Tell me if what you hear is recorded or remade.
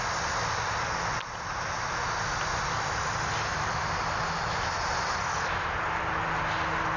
recorded